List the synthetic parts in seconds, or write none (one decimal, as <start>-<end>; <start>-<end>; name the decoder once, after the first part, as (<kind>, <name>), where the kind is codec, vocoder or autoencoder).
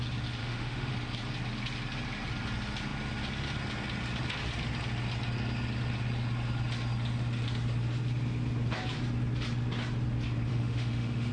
0.4-0.9 (autoencoder, DAC-VAE); 10.5-11.3